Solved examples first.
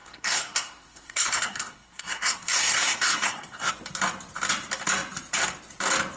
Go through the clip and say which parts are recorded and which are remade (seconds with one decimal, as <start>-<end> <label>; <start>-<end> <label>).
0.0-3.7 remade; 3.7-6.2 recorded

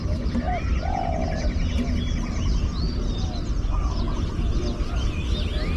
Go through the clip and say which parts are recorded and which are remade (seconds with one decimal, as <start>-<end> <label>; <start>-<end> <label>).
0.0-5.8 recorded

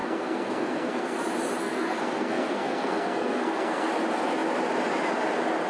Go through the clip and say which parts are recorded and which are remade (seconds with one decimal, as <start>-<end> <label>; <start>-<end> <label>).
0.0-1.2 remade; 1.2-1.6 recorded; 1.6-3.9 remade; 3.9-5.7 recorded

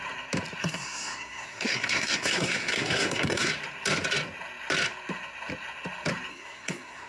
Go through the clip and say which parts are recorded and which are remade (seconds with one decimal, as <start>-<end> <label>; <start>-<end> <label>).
0.0-0.6 recorded; 0.6-3.5 remade; 3.5-6.3 recorded; 6.3-7.1 remade